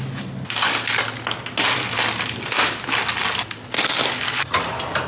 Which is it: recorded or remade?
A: recorded